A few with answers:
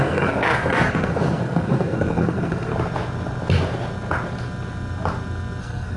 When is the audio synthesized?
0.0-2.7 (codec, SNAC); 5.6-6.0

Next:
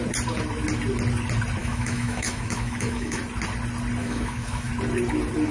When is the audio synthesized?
1.6-3.2 (autoencoder, DAC-VAE); 4.0-4.7

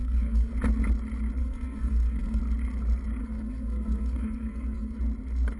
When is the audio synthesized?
0.0-0.5 (codec, SNAC); 1.4-2.4; 3.2-5.0

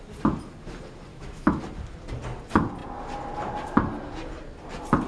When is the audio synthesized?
1.1-1.6 (autoencoder, DAC-VAE)

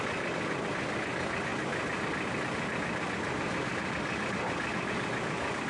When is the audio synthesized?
none

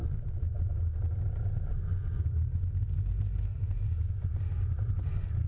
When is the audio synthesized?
none

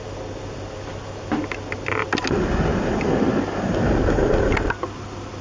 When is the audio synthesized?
none

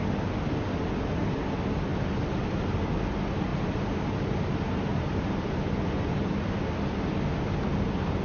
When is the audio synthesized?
3.5-4.0 (vocoder, BigVGAN v2); 4.9-5.6